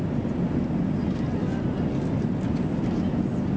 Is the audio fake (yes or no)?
no